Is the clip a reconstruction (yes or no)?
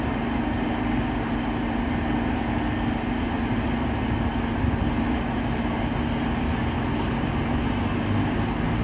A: no